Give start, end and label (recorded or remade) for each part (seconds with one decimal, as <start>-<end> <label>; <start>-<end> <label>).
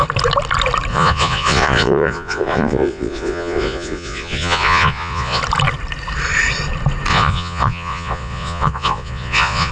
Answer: 0.0-0.9 recorded; 0.9-5.4 remade; 5.4-7.1 recorded; 7.1-9.7 remade